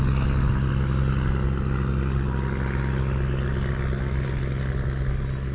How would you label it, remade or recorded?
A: recorded